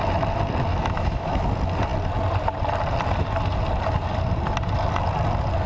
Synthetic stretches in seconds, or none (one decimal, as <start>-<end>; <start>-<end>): 0.7-1.4